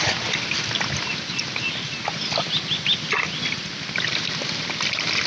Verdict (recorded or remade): recorded